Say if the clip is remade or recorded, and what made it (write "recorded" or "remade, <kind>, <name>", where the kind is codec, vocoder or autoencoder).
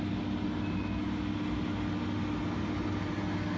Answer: recorded